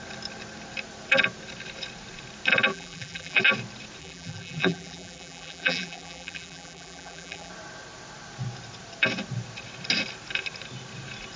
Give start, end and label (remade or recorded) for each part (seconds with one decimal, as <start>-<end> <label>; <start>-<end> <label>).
0.0-2.7 recorded; 2.7-3.4 remade; 3.4-4.0 recorded; 4.0-7.5 remade; 7.5-11.4 recorded